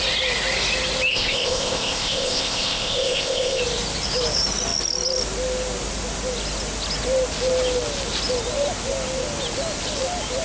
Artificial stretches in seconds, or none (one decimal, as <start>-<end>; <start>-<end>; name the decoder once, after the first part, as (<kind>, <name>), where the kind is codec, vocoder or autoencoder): 1.1-3.6 (codec, ZipCodec)